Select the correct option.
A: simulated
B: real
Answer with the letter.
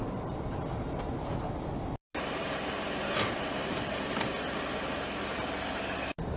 A